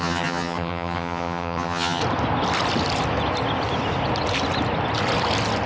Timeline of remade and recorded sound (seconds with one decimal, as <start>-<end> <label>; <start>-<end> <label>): 0.0-2.0 remade; 2.0-5.7 recorded